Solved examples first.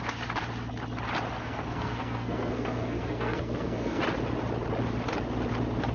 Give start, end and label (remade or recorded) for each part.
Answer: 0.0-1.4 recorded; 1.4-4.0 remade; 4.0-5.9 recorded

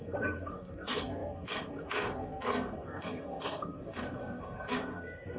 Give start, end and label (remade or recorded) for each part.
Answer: 0.0-5.4 remade